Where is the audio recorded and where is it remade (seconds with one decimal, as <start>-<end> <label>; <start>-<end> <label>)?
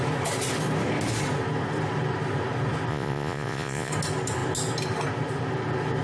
0.0-2.9 recorded; 2.9-3.9 remade; 3.9-6.0 recorded